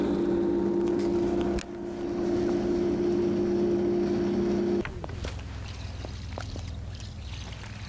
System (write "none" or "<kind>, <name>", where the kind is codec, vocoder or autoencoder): none